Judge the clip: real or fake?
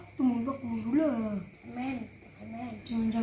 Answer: real